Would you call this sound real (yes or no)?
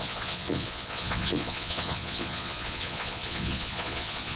no